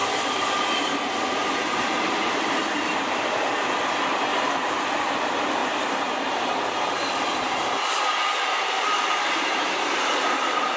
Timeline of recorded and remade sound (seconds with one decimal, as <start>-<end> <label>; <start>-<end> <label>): 0.0-0.5 remade; 0.5-4.3 recorded; 4.3-4.9 remade; 4.9-5.6 recorded; 5.6-9.7 remade; 9.7-10.8 recorded